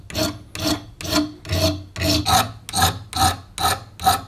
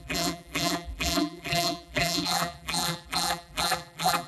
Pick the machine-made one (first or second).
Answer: second